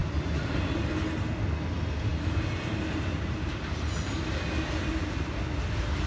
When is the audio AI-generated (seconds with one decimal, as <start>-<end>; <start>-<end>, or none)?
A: none